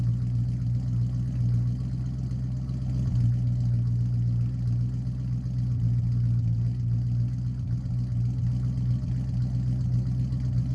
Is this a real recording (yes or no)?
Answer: yes